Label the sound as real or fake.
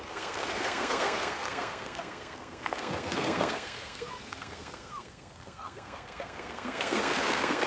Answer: fake